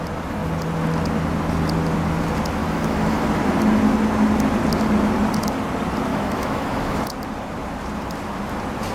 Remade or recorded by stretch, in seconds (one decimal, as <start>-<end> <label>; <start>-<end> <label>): 0.0-2.6 recorded; 2.6-3.2 remade; 3.2-6.1 recorded; 6.1-7.0 remade; 7.0-8.9 recorded